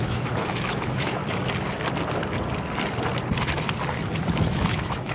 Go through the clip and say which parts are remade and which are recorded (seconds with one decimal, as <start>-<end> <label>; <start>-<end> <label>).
0.0-1.2 remade; 1.2-4.3 recorded; 4.3-5.1 remade